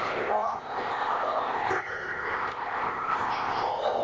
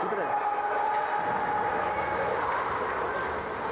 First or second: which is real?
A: second